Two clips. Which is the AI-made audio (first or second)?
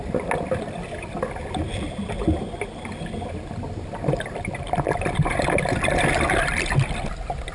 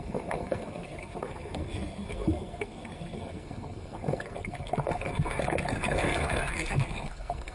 second